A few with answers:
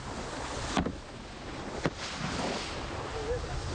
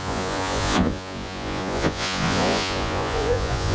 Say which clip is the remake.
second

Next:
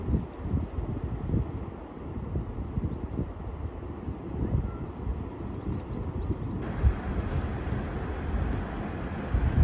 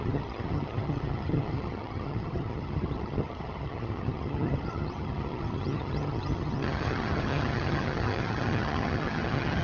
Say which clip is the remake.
second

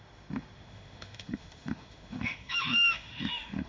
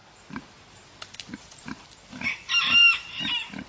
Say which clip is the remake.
first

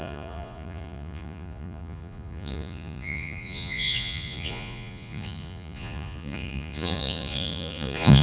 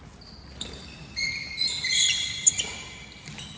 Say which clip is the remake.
first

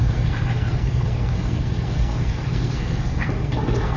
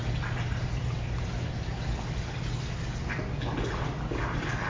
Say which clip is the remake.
first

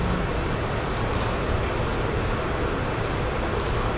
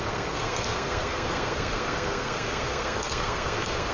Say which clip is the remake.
second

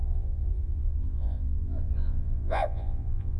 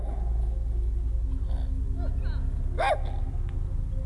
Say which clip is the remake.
first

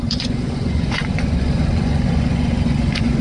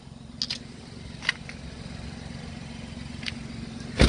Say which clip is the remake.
first